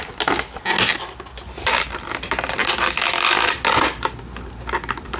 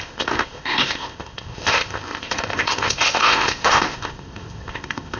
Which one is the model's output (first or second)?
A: second